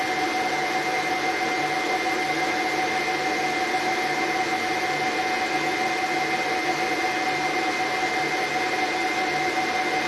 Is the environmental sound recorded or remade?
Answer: recorded